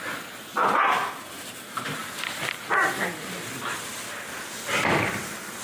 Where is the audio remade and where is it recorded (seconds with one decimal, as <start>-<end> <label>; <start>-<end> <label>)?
0.0-5.6 recorded